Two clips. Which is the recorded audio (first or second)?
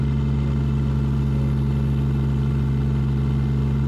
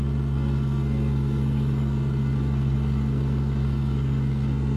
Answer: first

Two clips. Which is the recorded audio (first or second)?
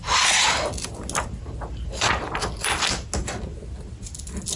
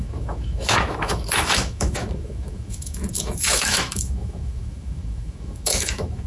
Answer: first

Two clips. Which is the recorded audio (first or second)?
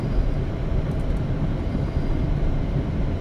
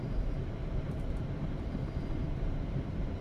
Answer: first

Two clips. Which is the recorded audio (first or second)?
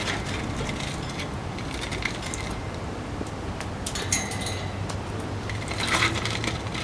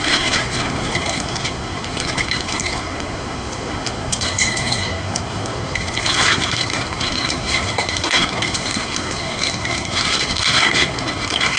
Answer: first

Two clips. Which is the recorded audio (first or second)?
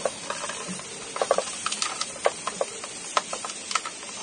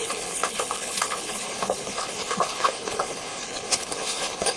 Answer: first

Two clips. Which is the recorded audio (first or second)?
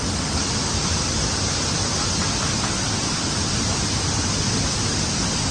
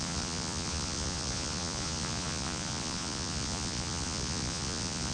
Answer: first